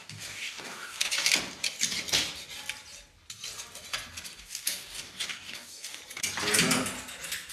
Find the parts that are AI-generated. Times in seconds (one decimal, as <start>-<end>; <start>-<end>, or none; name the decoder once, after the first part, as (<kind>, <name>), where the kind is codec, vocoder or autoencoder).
0.0-1.3 (codec, DAC); 4.4-6.0